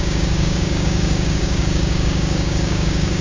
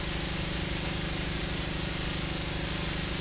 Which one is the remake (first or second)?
first